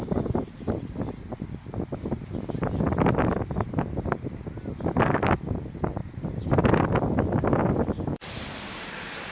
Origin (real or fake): real